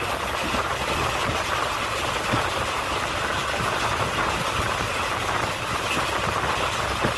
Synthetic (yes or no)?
no